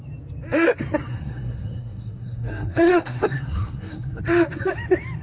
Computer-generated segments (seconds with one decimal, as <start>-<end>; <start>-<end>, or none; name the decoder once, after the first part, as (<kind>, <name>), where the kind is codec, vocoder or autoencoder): 1.1-4.2 (codec, SNAC)